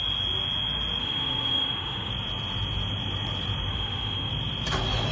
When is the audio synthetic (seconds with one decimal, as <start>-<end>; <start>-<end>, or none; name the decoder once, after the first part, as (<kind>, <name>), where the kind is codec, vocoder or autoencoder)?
1.0-2.1 (autoencoder, DAC-VAE); 3.7-4.3